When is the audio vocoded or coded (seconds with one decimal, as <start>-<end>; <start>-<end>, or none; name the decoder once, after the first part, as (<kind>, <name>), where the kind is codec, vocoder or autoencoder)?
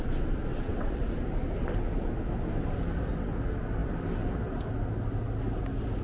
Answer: 0.5-1.0 (vocoder, WaveNeXt)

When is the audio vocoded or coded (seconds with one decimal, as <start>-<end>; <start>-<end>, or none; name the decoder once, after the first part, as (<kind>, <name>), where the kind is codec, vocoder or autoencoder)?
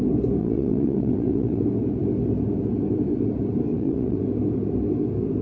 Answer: 0.4-1.6 (vocoder, WaveNeXt); 3.7-4.2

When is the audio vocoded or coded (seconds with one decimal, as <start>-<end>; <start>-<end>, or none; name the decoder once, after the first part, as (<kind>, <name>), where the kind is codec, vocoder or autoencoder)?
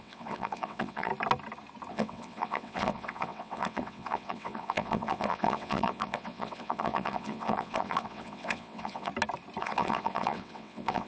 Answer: 0.0-1.1 (vocoder, WaveNeXt); 1.9-9.1; 9.6-11.1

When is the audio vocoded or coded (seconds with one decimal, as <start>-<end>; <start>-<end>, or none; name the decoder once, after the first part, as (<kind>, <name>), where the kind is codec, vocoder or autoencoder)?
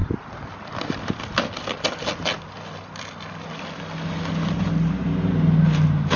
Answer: none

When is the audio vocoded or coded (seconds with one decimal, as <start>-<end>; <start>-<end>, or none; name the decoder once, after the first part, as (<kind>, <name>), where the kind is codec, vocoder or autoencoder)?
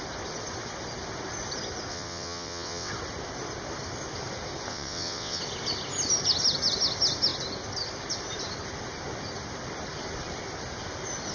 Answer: 1.9-2.9 (vocoder, WaveNeXt); 4.7-5.4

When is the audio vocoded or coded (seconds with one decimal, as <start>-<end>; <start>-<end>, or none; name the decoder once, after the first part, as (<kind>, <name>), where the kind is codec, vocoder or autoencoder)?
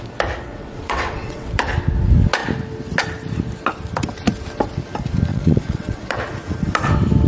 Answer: 0.5-1.5 (vocoder, WaveNeXt); 5.3-6.2